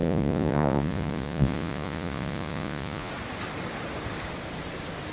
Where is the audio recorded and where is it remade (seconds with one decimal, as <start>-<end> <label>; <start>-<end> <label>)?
0.0-3.1 remade; 3.1-5.1 recorded